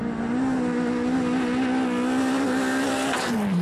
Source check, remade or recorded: recorded